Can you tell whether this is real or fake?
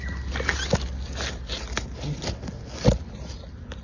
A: real